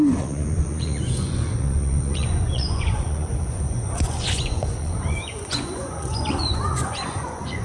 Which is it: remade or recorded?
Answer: remade